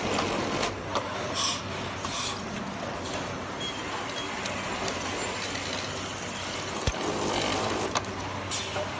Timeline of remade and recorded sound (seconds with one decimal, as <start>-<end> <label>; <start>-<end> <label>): 0.0-0.9 recorded; 0.9-1.6 remade; 1.6-9.0 recorded